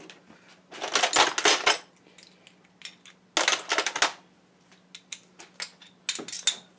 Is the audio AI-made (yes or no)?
no